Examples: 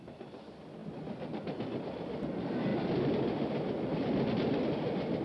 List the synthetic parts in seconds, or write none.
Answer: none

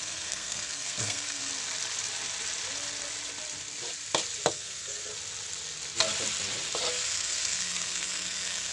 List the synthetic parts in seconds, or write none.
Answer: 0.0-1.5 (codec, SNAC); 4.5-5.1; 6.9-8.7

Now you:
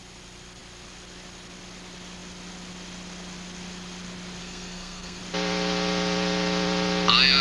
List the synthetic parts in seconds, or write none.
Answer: 4.4-5.2 (codec, SNAC)